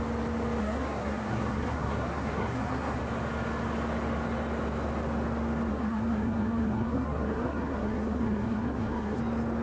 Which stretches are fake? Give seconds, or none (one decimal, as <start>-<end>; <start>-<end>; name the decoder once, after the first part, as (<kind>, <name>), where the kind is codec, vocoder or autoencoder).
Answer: 0.6-3.0 (codec, SNAC); 5.7-9.2